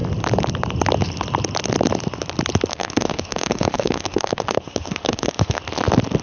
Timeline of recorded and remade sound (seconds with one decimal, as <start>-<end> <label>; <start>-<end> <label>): 0.0-2.7 recorded; 2.7-5.6 remade; 5.6-6.2 recorded